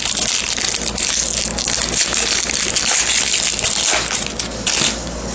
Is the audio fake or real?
real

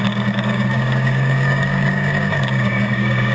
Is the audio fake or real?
fake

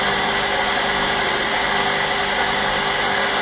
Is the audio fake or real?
real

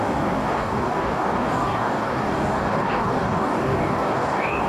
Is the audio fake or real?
fake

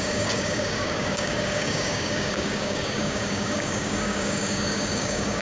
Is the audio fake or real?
fake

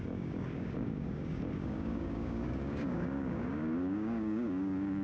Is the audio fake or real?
fake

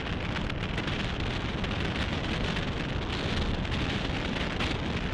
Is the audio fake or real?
real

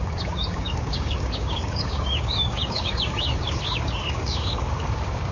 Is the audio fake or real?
fake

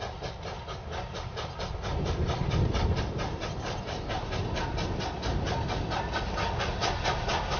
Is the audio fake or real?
real